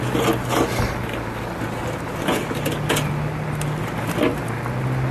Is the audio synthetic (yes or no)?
no